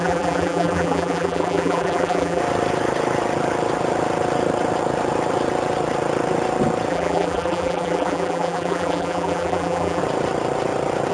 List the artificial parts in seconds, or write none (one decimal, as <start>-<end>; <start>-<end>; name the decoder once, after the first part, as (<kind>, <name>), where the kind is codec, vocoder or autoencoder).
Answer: 0.0-2.4 (vocoder, BigVGAN v2); 6.9-10.0